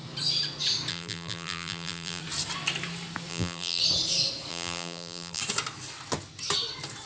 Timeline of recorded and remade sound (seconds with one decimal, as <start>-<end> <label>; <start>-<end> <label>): 0.0-0.9 recorded; 0.9-2.2 remade; 2.2-3.3 recorded; 3.3-3.8 remade; 3.8-4.5 recorded; 4.5-5.4 remade; 5.4-7.1 recorded